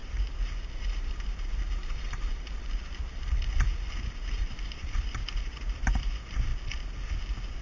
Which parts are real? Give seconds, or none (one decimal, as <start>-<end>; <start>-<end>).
6.5-7.6